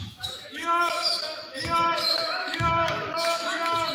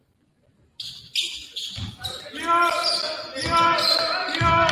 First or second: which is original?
second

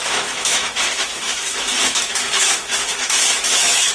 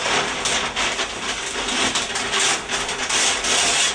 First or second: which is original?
second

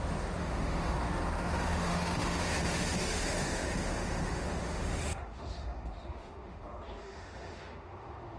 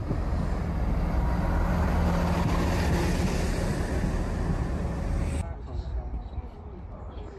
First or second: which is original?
second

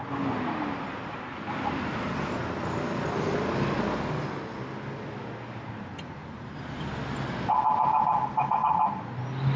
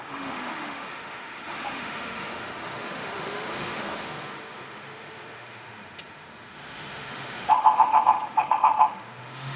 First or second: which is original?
first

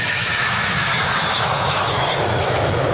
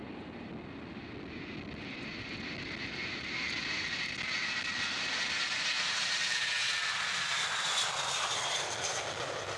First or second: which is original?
second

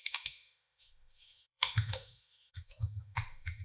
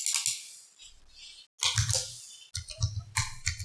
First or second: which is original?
second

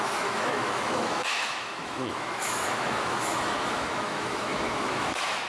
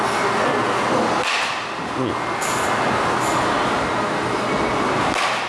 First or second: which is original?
second